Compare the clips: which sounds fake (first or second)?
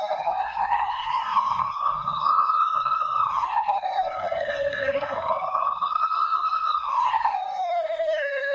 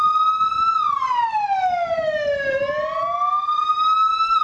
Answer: first